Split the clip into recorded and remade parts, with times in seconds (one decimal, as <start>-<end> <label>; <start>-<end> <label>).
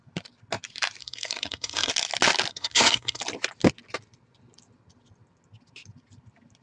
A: 0.0-1.0 recorded; 1.0-1.9 remade; 1.9-2.5 recorded; 2.5-3.2 remade; 3.2-6.6 recorded